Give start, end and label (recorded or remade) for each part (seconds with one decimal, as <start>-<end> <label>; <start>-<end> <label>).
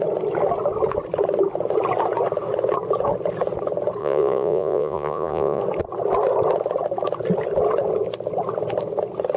0.0-4.0 recorded; 4.0-5.6 remade; 5.6-9.4 recorded